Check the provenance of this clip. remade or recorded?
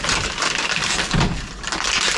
recorded